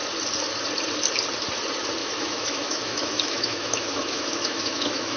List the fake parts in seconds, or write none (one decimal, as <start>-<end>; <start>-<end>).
2.0-5.2